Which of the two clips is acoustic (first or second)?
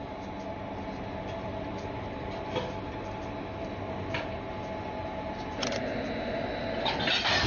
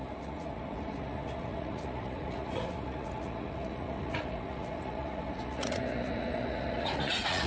first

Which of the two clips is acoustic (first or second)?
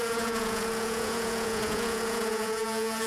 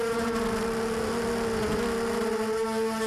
second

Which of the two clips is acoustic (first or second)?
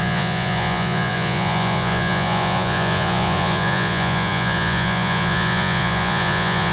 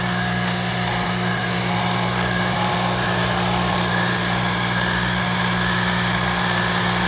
second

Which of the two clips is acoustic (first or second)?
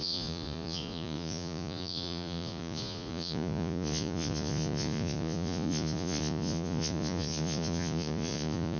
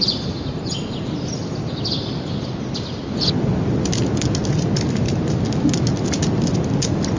second